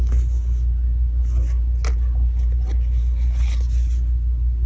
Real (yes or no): yes